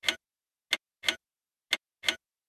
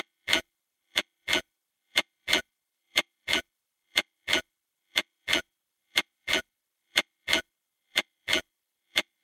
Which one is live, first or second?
first